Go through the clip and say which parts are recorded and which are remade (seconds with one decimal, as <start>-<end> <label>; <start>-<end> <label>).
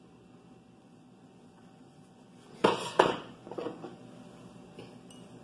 0.0-0.8 recorded; 0.8-4.0 remade; 4.0-5.4 recorded